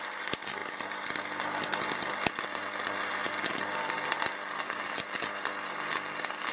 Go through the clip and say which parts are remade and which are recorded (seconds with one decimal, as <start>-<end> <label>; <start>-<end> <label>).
0.0-6.5 recorded